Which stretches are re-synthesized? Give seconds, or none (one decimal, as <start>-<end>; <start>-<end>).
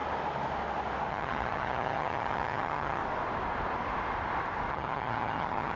1.1-3.0; 4.7-5.8